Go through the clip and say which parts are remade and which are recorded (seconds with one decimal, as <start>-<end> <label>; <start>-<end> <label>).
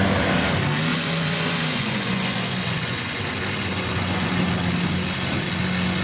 0.0-0.9 recorded; 0.9-3.2 remade; 3.2-3.6 recorded; 3.6-4.3 remade; 4.3-6.0 recorded